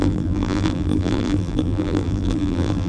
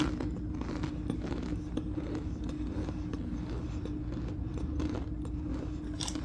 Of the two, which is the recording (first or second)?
second